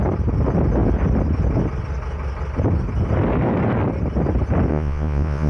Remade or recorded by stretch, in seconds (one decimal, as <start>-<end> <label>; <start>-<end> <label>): 0.0-4.7 recorded; 4.7-5.5 remade